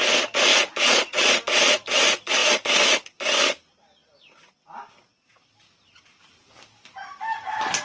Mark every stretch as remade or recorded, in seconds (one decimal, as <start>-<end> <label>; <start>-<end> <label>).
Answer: 0.0-0.5 recorded; 0.5-1.3 remade; 1.3-7.8 recorded

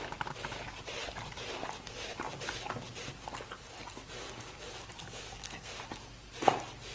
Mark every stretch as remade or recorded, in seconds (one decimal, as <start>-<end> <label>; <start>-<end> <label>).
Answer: 0.0-5.0 recorded; 5.0-5.7 remade; 5.7-6.9 recorded

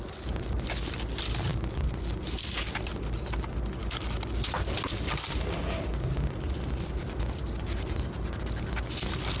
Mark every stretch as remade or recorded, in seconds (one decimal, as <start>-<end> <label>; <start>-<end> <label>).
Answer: 0.0-9.4 recorded

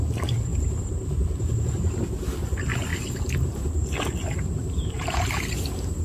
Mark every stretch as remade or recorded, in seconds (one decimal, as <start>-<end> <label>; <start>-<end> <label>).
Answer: 0.0-2.9 recorded; 2.9-6.0 remade